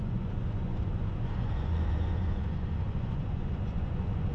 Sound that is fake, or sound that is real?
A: fake